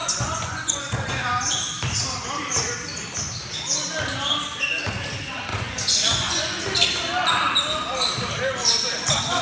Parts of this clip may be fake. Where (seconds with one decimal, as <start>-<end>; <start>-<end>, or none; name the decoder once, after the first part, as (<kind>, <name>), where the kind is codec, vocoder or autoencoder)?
0.0-1.1 (vocoder, Vocos); 5.5-6.6

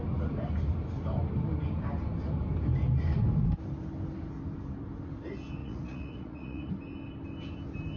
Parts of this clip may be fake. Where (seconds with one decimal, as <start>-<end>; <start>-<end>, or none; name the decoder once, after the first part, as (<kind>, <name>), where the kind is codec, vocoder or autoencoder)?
5.6-6.7 (vocoder, Vocos)